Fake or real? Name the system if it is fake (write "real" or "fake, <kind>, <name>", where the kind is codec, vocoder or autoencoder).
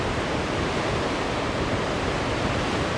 real